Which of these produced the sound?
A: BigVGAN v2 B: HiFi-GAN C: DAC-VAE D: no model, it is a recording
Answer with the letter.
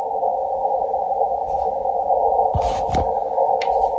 D